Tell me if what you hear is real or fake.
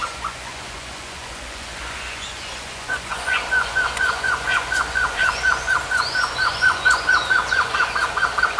fake